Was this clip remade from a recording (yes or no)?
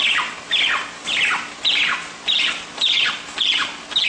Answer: no